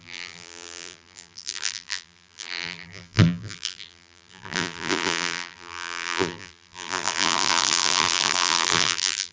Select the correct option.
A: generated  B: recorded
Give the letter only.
A